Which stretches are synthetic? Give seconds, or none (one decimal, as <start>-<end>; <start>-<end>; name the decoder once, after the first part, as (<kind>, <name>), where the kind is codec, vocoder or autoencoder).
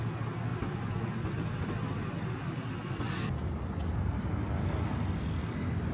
none